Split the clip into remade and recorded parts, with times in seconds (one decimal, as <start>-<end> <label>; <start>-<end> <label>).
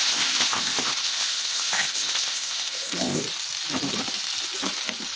0.0-3.2 remade; 3.2-5.2 recorded